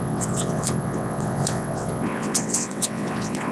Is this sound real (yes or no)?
no